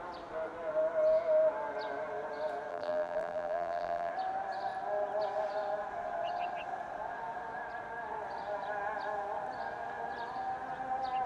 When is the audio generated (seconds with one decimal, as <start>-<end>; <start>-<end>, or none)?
2.7-4.1

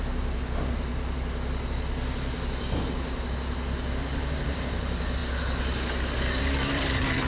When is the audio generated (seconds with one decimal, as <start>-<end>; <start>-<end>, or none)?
0.0-0.9; 4.5-5.2; 6.4-7.3

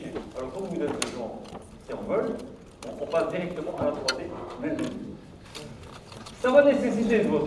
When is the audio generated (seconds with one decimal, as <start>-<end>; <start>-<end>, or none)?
3.1-4.2; 5.1-7.5

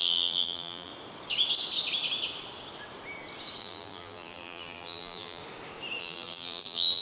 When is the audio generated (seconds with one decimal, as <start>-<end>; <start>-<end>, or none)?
0.0-0.9; 3.6-5.4; 6.0-7.0

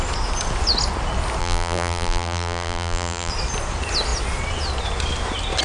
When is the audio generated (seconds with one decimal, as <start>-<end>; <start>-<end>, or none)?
1.4-3.3

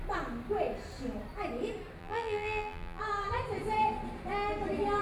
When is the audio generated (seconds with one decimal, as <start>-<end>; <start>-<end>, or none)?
2.0-3.0

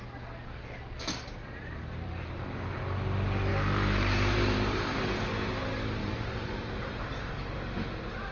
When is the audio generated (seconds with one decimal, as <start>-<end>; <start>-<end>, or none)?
1.4-2.8; 3.5-5.3; 6.0-7.3

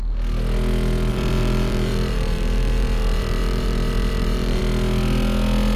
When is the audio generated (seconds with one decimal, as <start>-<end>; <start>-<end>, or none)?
1.1-4.6